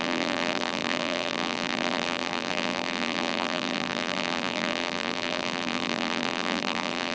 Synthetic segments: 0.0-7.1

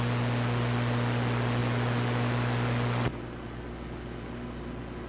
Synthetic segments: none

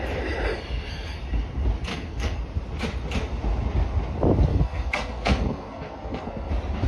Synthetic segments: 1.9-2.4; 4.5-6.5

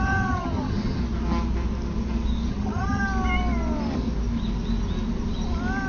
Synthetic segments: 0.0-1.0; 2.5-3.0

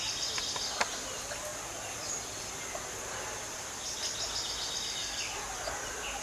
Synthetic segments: none

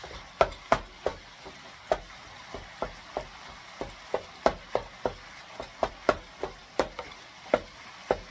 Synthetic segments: none